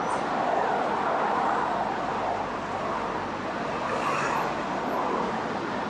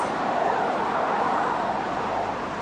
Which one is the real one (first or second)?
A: first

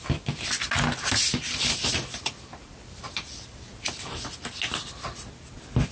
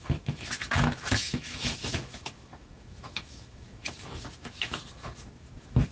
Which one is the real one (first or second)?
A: first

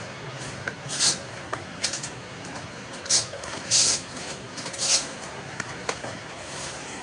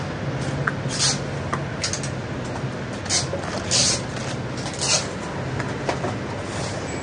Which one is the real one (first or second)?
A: second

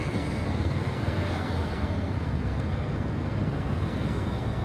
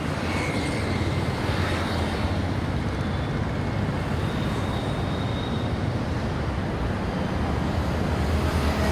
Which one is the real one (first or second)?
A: second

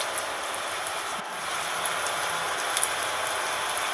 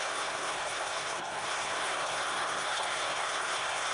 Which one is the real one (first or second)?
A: first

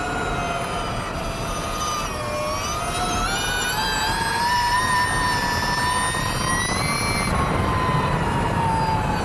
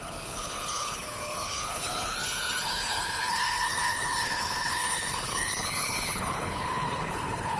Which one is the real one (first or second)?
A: first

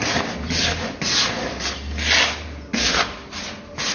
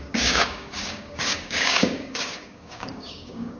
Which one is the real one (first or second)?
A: first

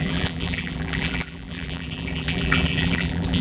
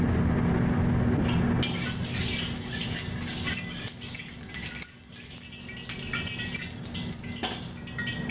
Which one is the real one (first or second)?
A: second